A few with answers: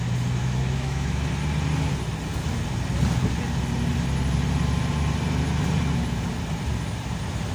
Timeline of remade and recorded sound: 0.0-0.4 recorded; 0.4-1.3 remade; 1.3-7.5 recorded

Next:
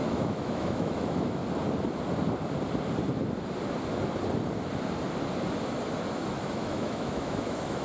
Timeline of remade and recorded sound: 0.0-1.4 remade; 1.4-6.1 recorded; 6.1-7.8 remade

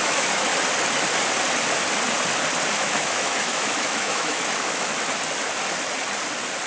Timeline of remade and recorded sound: 0.0-0.5 remade; 0.5-2.7 recorded; 2.7-4.9 remade; 4.9-6.7 recorded